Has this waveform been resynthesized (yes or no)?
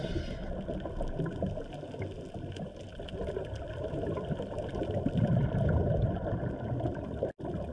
no